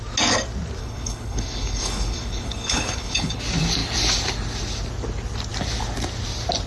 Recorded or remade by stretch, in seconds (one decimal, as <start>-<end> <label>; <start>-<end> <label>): 0.0-0.8 recorded; 0.8-3.4 remade; 3.4-6.7 recorded